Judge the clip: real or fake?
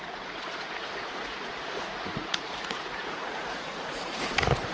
fake